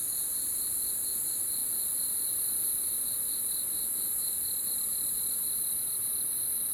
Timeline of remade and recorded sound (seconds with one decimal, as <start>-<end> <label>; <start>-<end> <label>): 0.0-6.7 recorded